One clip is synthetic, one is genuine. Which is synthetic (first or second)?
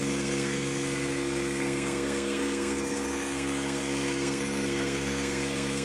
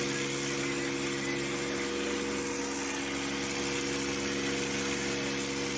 first